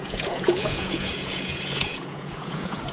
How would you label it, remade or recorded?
remade